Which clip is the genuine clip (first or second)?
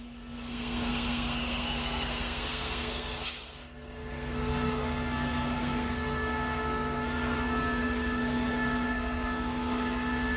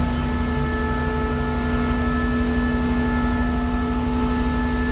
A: second